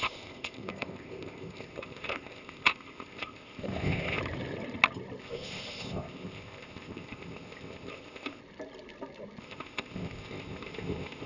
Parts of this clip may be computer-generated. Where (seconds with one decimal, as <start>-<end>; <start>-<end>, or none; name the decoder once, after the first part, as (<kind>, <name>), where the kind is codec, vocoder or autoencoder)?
0.0-4.2 (codec, ZipCodec); 5.2-8.4; 9.4-11.3